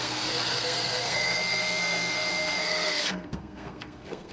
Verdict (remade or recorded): remade